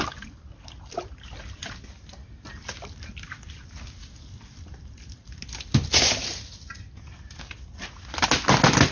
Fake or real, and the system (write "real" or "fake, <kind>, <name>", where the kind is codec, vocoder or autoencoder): real